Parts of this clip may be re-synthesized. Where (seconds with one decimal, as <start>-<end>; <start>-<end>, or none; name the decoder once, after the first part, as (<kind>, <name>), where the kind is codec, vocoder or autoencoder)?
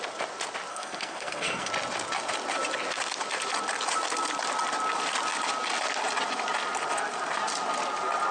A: 0.7-1.7 (codec, SNAC)